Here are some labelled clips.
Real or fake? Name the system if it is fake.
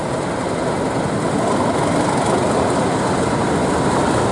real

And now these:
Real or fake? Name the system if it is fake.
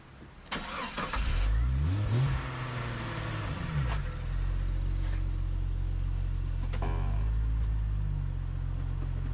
real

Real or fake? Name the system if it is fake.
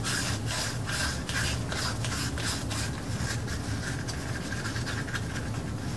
real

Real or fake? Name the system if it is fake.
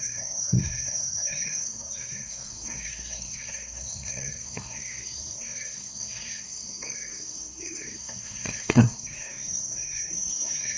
fake, codec, SNAC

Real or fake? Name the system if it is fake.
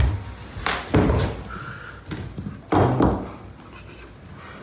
real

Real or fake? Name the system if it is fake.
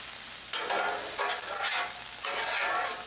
real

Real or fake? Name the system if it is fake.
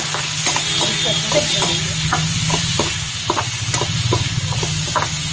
real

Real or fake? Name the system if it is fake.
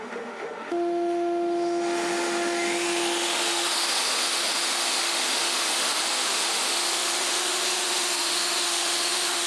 fake, autoencoder, DAC-VAE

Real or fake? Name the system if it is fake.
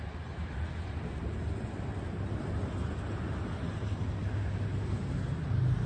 real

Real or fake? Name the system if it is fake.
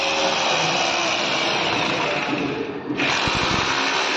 real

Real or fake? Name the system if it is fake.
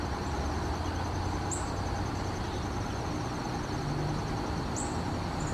real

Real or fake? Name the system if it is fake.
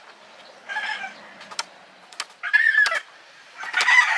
real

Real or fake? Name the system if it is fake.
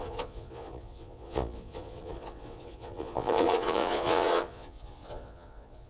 fake, vocoder, Vocos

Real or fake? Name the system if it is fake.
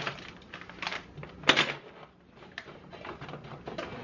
real